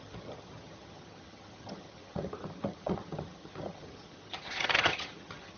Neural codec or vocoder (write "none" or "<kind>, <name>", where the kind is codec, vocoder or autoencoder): vocoder, HiFi-GAN